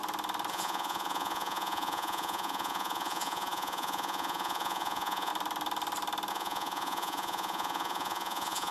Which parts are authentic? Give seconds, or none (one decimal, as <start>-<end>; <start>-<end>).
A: 0.0-0.5; 5.3-6.3